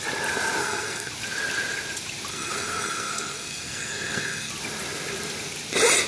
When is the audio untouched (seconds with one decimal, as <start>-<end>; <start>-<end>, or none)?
0.0-0.6; 1.1-2.3; 4.5-6.1